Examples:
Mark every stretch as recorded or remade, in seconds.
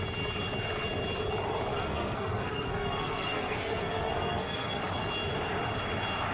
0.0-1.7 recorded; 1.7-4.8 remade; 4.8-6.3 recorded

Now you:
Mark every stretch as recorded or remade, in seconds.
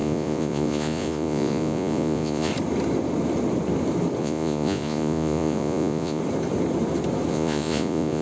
0.0-2.5 remade; 2.5-4.2 recorded; 4.2-6.2 remade; 6.2-7.3 recorded; 7.3-8.2 remade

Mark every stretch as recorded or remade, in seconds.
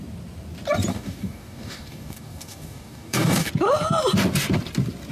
0.0-0.9 recorded; 0.9-3.5 remade; 3.5-5.1 recorded